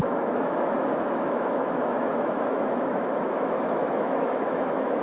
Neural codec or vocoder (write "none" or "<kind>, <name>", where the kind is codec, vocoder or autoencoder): autoencoder, DAC-VAE